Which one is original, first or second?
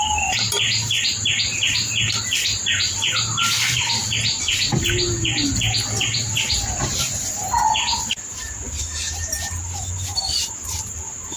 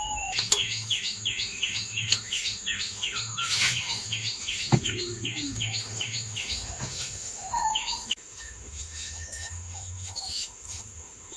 first